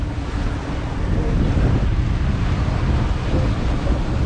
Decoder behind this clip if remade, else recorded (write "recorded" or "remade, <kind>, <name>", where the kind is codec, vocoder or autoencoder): recorded